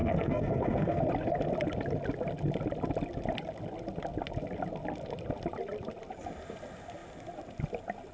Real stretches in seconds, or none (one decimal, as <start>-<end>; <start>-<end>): 1.0-8.1